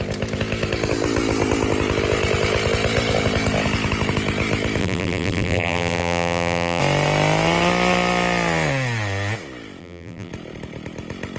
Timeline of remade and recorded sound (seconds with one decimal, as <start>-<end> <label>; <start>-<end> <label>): 0.0-4.8 recorded; 4.8-6.8 remade; 6.8-9.8 recorded; 9.8-10.3 remade; 10.3-11.4 recorded